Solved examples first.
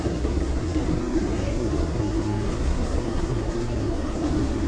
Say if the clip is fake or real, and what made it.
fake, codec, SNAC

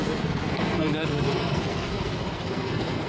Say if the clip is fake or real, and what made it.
fake, codec, SNAC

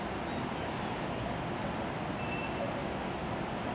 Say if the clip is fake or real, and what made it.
real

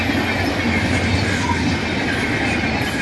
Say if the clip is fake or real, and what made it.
real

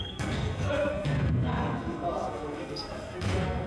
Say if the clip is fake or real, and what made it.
fake, codec, SNAC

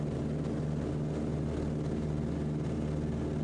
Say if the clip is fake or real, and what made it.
real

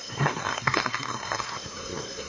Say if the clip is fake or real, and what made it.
fake, codec, SNAC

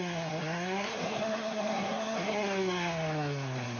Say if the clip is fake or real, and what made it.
fake, codec, SNAC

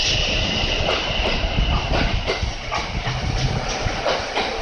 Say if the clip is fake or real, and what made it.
real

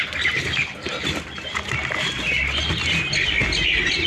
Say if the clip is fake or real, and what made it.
real